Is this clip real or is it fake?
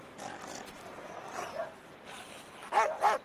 real